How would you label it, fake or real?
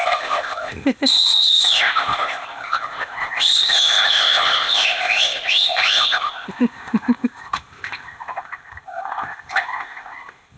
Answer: fake